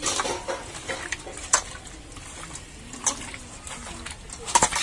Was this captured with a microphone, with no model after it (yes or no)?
yes